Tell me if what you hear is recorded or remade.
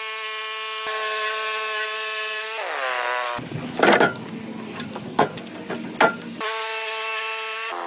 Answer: recorded